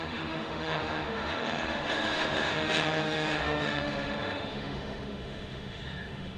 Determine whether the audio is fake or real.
fake